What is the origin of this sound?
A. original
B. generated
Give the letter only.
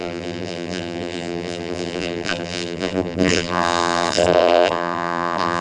B